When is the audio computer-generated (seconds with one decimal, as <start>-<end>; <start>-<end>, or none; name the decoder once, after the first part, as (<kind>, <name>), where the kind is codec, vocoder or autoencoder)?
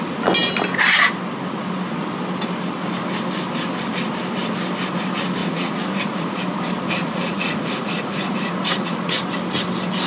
5.4-6.4 (vocoder, Vocos); 7.0-9.2